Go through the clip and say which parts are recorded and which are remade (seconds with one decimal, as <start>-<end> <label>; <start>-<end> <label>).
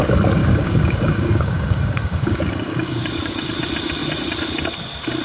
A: 0.0-0.4 recorded; 0.4-3.5 remade; 3.5-5.2 recorded